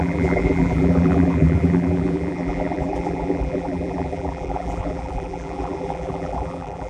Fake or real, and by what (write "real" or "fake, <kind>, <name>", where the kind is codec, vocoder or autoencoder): fake, vocoder, BigVGAN v2